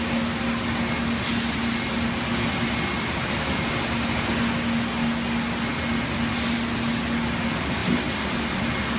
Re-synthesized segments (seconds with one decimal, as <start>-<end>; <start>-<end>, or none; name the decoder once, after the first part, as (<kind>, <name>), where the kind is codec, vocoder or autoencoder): none